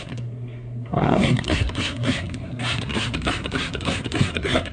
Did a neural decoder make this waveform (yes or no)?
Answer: yes